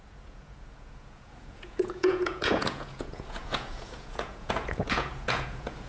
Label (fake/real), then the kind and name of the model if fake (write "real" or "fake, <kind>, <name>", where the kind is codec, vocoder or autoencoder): fake, vocoder, Vocos